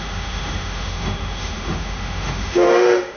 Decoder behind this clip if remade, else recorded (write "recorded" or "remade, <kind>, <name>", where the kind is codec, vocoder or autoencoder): remade, autoencoder, DAC-VAE